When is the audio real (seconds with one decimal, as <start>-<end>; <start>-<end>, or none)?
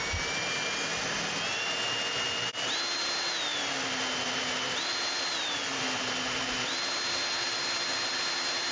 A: 0.0-8.7